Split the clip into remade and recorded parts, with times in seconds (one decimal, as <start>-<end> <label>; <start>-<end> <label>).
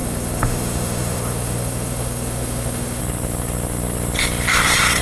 0.0-3.0 remade; 3.0-5.0 recorded